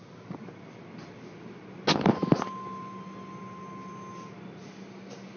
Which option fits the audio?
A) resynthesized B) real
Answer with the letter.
B